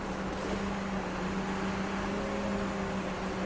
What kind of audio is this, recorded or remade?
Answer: recorded